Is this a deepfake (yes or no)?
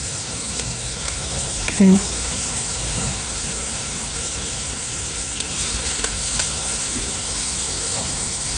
yes